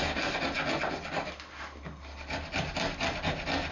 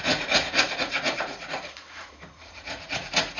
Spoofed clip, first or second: second